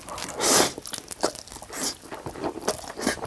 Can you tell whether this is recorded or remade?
recorded